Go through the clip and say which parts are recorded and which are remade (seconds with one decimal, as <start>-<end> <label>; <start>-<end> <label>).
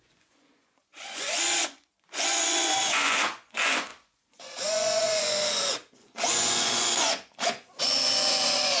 0.0-8.8 remade